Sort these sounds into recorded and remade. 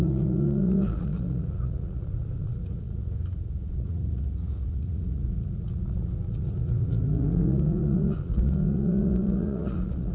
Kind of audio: remade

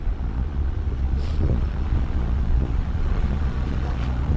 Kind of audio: remade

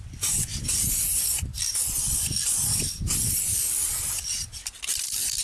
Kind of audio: recorded